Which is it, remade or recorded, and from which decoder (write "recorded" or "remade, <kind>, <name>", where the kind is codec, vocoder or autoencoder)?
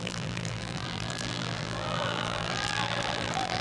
remade, vocoder, BigVGAN v2